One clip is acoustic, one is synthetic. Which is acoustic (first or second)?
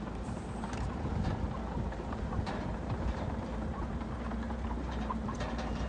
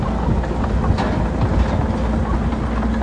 second